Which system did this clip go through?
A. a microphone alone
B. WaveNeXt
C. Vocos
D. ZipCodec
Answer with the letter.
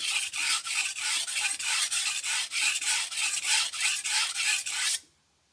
A